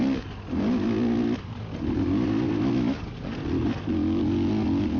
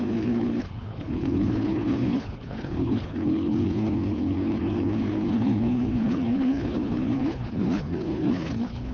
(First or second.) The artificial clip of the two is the second